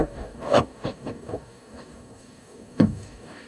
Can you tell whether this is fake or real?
fake